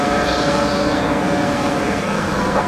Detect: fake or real fake